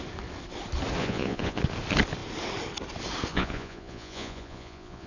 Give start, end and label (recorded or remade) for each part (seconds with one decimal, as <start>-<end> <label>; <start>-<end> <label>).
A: 0.0-1.0 recorded; 1.0-1.6 remade; 1.6-3.3 recorded; 3.3-5.1 remade